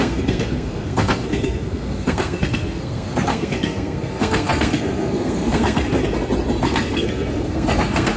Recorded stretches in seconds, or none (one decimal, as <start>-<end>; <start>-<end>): 6.0-6.6